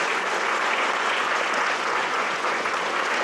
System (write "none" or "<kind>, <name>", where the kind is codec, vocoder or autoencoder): vocoder, Vocos